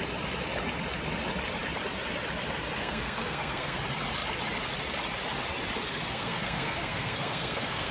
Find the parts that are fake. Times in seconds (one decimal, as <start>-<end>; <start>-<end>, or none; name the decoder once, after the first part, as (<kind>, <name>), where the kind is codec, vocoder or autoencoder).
2.8-3.8 (codec, SNAC); 5.9-7.9